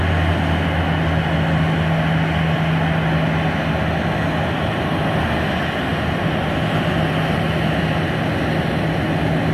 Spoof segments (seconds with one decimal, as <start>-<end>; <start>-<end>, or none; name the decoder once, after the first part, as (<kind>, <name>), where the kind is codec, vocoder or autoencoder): none